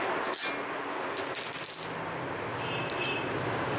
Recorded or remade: recorded